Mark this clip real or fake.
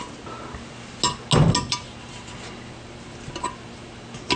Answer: real